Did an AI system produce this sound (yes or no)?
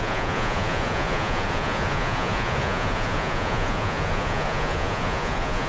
yes